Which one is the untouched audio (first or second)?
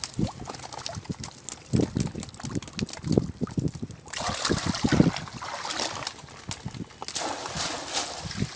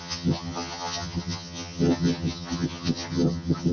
first